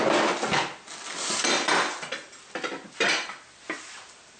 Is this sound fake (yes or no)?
no